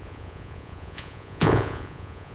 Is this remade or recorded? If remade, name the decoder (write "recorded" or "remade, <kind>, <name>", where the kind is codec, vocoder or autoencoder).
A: remade, vocoder, Vocos